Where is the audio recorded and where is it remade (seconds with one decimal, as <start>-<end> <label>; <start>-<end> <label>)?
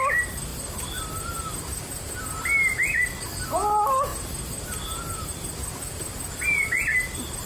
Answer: 0.0-7.5 recorded